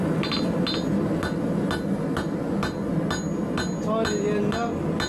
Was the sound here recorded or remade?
recorded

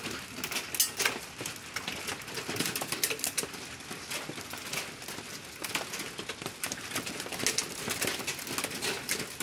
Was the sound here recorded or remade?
recorded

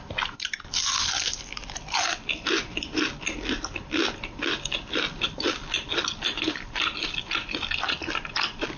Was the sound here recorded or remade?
recorded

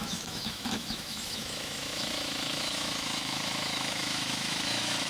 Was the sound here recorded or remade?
remade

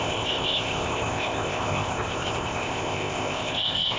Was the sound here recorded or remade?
remade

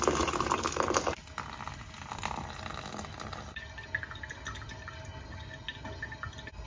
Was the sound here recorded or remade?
recorded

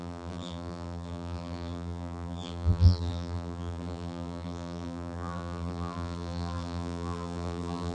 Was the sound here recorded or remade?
remade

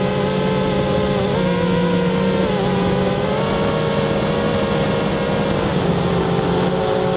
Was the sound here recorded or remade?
recorded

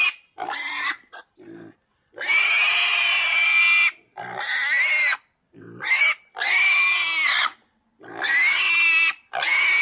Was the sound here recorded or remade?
recorded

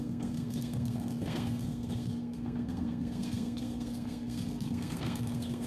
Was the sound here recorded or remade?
remade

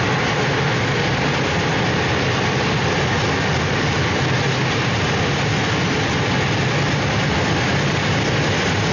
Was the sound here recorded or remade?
recorded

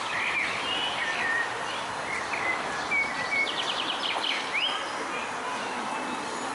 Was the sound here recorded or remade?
remade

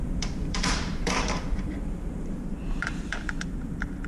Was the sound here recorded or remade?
remade